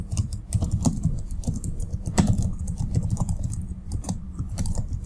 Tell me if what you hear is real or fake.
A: fake